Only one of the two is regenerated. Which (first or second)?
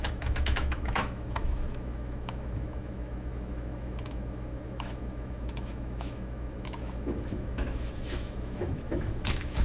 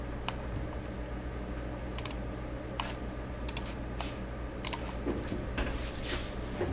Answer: first